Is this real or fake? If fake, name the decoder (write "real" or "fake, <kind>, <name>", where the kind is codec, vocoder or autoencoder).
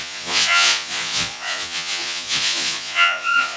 fake, vocoder, Vocos